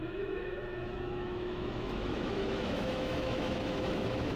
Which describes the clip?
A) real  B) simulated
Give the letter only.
B